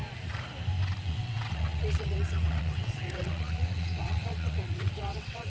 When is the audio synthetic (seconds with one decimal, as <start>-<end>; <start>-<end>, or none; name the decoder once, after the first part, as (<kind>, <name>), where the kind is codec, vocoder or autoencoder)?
1.0-5.5 (vocoder, WaveNeXt)